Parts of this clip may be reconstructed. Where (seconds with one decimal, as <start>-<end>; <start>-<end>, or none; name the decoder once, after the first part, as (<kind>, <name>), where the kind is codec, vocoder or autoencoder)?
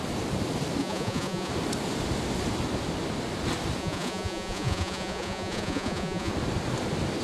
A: 0.8-1.5 (vocoder, Vocos); 3.8-6.3